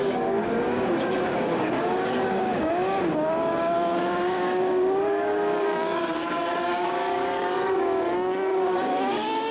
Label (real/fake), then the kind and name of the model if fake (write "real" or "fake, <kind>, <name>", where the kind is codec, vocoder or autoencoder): fake, codec, DAC